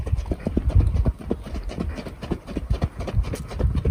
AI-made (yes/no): no